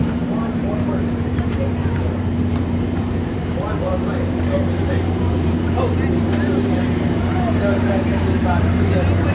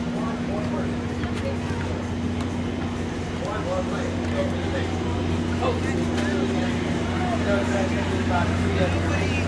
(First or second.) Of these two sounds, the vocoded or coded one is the first